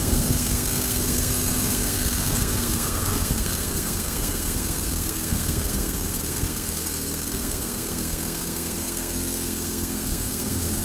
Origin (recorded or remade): remade